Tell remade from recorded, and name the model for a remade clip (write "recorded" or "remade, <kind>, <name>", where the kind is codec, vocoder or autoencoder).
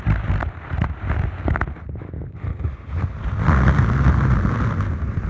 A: recorded